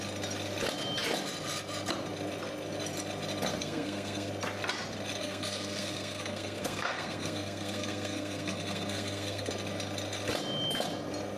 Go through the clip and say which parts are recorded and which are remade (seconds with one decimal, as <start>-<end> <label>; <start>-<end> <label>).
0.0-3.5 recorded; 3.5-4.3 remade; 4.3-5.2 recorded; 5.2-9.5 remade; 9.5-11.4 recorded